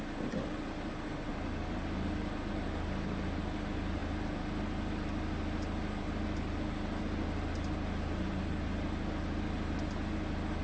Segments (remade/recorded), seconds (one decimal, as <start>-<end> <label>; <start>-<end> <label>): 0.0-10.6 recorded